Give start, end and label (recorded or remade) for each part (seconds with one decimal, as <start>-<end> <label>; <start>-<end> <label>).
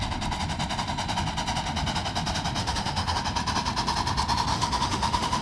0.0-2.6 recorded; 2.6-3.2 remade; 3.2-4.5 recorded; 4.5-5.4 remade